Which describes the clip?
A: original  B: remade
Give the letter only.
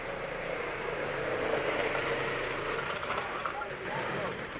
B